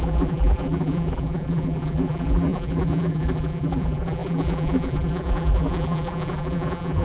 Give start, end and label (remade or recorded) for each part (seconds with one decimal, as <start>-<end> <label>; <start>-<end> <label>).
0.0-7.0 remade